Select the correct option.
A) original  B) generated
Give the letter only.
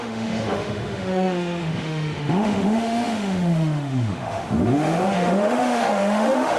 B